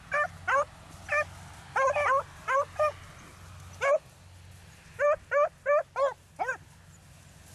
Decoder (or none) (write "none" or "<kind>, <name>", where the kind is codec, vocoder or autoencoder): none